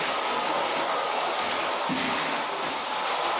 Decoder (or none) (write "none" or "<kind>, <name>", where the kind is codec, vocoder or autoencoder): none